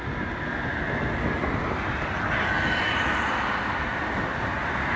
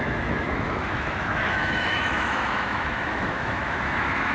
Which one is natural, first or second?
first